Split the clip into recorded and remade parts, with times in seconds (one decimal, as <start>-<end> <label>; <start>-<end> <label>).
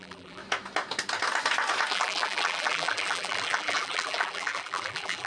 0.0-0.4 remade; 0.4-1.9 recorded; 1.9-5.3 remade